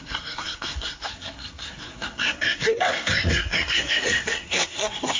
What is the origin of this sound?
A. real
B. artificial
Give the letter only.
B